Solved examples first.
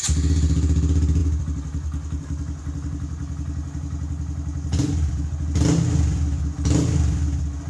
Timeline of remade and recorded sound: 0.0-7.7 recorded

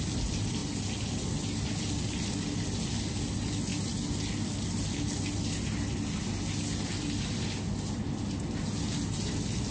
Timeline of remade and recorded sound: 0.0-9.7 recorded

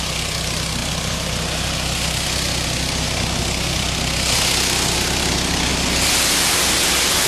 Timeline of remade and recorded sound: 0.0-7.3 recorded